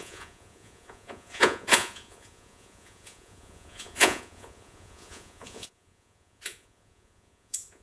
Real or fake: fake